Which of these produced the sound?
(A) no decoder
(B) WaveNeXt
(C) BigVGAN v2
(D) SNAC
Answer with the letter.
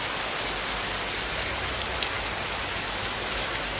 A